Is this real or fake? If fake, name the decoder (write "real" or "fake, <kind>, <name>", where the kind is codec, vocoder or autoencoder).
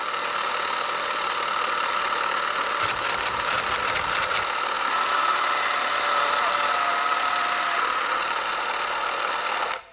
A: fake, vocoder, BigVGAN v2